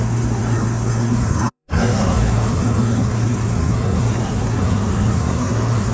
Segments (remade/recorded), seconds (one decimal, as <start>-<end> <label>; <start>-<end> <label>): 0.0-5.9 remade

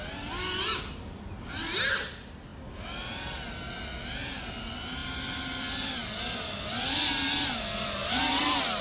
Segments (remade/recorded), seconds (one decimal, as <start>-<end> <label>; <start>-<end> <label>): 0.0-8.8 recorded

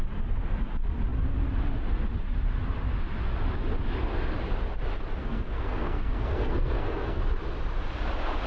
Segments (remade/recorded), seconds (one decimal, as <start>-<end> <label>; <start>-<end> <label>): 0.0-5.2 recorded; 5.2-7.2 remade; 7.2-8.5 recorded